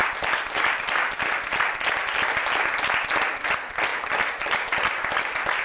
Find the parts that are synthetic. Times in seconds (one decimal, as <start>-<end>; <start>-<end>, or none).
0.0-2.6; 3.9-5.6